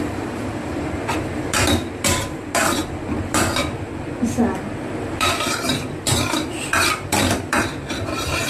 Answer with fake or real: fake